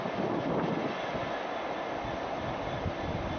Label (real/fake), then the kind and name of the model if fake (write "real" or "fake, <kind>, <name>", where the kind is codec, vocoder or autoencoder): real